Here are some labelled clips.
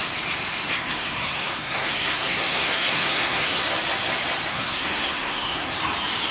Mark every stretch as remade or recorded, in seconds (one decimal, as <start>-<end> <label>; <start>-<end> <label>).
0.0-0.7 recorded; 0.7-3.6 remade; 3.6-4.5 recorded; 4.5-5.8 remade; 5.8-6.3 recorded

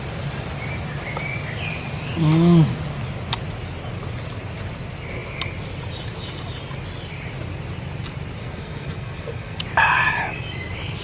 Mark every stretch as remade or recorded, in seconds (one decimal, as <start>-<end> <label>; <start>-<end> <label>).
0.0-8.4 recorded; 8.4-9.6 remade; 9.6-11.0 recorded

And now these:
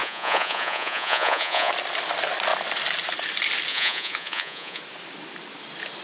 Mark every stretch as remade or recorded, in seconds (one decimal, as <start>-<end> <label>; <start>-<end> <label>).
0.0-1.7 remade; 1.7-3.7 recorded; 3.7-4.8 remade; 4.8-6.0 recorded